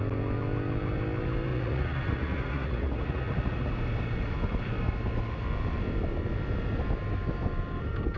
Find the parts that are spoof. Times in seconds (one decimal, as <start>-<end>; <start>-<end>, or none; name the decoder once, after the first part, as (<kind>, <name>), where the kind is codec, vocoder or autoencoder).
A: 1.5-3.7 (vocoder, Vocos)